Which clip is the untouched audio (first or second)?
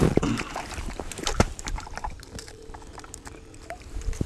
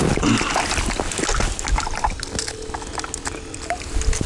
second